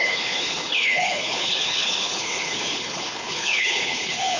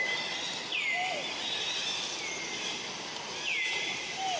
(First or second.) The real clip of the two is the second